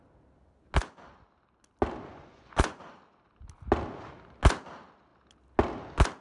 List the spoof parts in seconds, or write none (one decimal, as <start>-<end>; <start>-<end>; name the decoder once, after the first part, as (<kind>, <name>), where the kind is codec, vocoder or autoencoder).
2.1-2.8 (vocoder, Vocos)

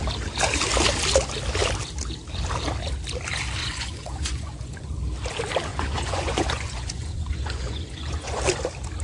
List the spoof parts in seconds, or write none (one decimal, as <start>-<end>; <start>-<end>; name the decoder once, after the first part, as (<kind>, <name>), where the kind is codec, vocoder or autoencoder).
3.6-4.9 (vocoder, Vocos); 5.7-8.4

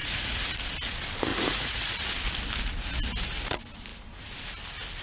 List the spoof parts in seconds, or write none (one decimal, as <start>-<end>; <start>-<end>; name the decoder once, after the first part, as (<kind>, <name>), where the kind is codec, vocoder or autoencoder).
0.0-0.5 (vocoder, Vocos); 1.3-1.9

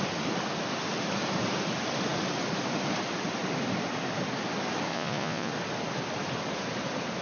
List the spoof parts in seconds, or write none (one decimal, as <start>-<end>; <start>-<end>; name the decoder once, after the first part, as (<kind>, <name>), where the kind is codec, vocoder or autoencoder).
4.9-5.5 (vocoder, Vocos)